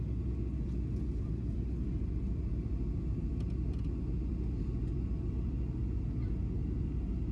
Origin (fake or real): real